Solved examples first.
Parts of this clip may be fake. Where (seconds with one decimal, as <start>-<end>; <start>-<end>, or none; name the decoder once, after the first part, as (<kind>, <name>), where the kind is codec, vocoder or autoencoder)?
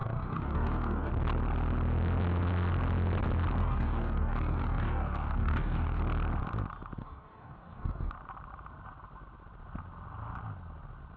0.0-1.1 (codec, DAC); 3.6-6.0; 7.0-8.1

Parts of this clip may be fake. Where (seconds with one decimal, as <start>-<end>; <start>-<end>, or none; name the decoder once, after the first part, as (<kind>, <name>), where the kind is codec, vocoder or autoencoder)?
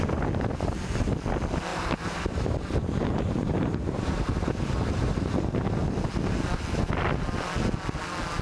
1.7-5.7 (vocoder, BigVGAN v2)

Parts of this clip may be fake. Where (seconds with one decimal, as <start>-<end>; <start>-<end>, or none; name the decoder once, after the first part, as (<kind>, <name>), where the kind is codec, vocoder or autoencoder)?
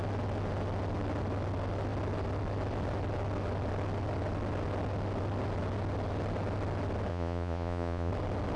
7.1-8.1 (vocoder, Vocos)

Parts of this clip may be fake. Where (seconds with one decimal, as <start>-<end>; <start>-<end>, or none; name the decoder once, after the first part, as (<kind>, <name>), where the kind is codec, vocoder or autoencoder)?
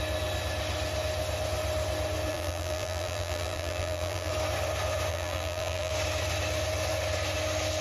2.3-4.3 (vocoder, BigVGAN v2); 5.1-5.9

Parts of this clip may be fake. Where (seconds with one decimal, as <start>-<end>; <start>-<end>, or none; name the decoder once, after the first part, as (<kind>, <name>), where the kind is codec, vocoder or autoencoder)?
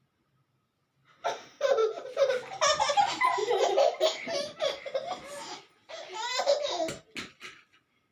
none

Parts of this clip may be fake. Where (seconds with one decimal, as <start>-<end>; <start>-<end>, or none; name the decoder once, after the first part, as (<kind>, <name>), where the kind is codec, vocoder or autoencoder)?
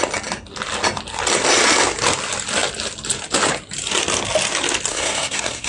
4.9-5.7 (codec, SNAC)